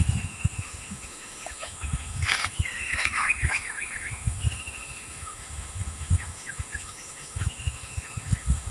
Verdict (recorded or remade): remade